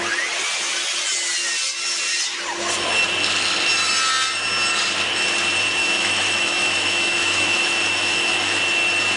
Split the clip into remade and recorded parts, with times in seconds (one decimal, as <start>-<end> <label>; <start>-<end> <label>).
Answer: 0.0-5.8 recorded; 5.8-8.6 remade; 8.6-9.2 recorded